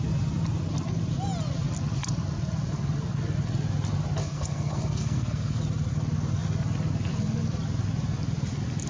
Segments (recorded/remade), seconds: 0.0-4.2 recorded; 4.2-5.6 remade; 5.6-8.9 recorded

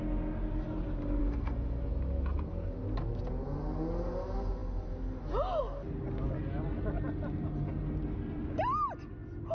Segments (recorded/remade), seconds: 0.0-1.2 recorded; 1.2-1.9 remade; 1.9-9.5 recorded

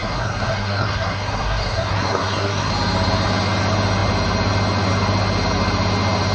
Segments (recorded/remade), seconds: 0.0-2.7 remade; 2.7-6.3 recorded

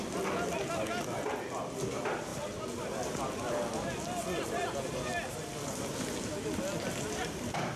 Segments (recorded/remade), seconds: 0.0-7.8 recorded

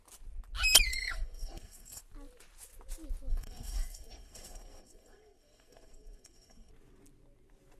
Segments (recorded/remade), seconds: 0.0-0.9 recorded; 0.9-2.0 remade; 2.0-3.3 recorded; 3.3-6.7 remade; 6.7-7.8 recorded